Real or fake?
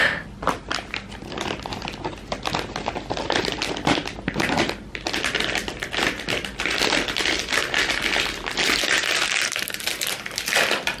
real